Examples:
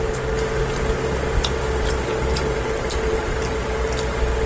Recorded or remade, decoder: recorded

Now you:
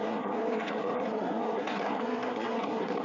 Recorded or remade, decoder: remade, codec, SNAC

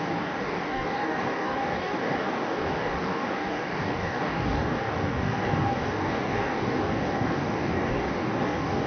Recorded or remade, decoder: remade, codec, DAC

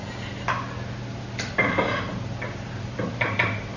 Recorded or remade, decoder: recorded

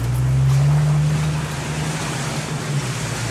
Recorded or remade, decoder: recorded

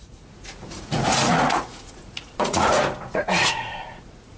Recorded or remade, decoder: remade, vocoder, Vocos